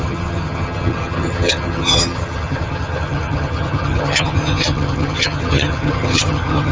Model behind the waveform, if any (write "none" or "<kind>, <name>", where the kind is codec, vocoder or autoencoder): vocoder, HiFi-GAN